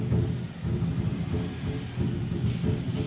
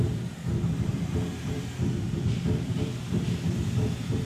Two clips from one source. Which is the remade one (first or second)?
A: second